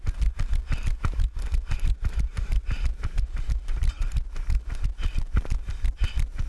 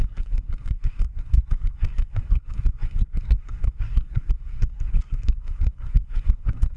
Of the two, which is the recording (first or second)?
first